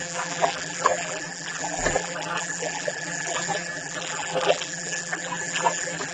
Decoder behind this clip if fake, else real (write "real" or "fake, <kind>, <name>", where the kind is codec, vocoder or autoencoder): fake, vocoder, BigVGAN v2